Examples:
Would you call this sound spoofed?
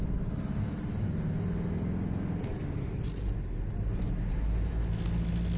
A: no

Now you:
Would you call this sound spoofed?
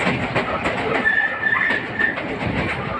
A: no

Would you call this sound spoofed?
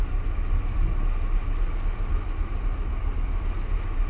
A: no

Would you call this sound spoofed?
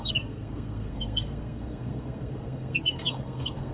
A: yes